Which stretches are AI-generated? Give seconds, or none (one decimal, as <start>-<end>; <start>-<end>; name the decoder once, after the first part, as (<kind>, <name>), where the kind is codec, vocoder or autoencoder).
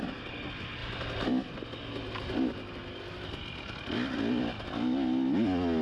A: none